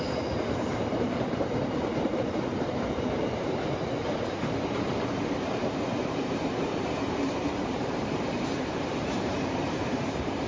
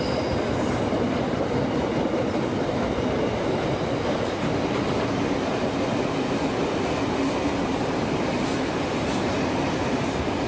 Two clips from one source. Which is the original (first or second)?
second